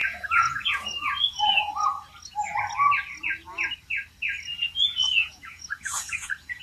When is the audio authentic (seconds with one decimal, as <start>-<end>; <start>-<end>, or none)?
2.0-4.5